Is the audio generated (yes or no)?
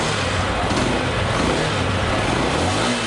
no